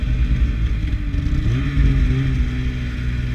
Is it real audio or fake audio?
real